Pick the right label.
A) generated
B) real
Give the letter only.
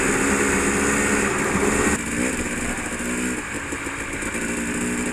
B